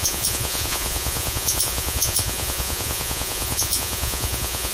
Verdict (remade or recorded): remade